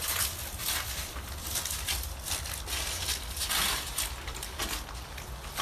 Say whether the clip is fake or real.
real